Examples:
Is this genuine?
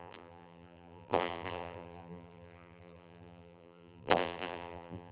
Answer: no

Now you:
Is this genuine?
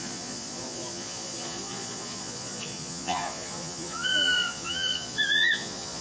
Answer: no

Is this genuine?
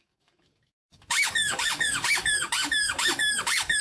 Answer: no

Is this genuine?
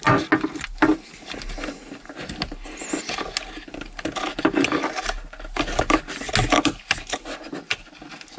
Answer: yes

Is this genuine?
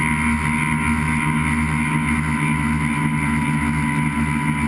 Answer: yes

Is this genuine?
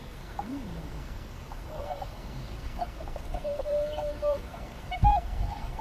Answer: no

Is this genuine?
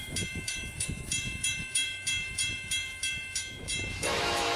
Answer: no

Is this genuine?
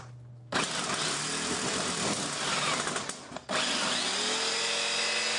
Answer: yes